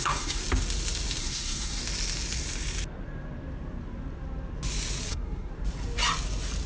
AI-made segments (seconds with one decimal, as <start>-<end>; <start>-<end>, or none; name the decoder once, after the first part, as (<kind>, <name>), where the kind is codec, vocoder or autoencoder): 0.0-0.4 (codec, SNAC); 1.2-1.8; 5.1-5.5